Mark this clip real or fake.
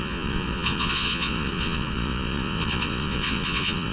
fake